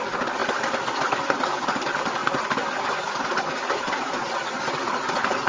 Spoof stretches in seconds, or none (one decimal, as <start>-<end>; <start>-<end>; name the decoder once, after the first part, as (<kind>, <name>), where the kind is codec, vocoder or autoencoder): none